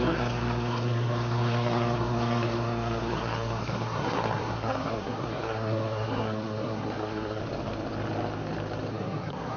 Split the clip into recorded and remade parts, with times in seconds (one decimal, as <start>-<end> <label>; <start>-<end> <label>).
0.0-7.4 remade; 7.4-8.9 recorded; 8.9-9.6 remade